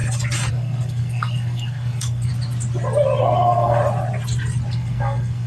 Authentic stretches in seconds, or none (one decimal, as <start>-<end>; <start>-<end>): 0.0-0.5; 2.3-3.2; 3.8-4.7